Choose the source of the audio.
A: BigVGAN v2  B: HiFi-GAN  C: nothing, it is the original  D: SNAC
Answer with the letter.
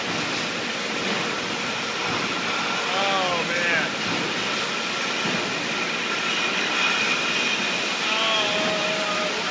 C